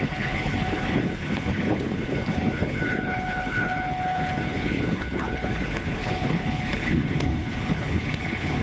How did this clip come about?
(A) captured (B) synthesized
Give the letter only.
B